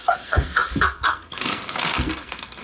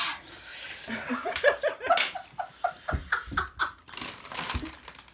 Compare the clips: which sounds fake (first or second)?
first